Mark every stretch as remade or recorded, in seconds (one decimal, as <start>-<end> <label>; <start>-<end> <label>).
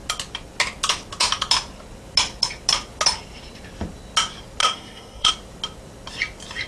0.0-4.6 recorded; 4.6-5.3 remade; 5.3-6.7 recorded